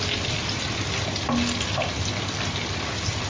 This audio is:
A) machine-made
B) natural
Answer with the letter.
B